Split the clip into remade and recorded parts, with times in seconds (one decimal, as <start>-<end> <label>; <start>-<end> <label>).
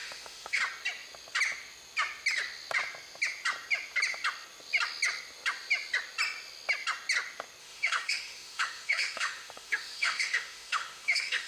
0.0-0.6 remade; 0.6-7.6 recorded; 7.6-11.5 remade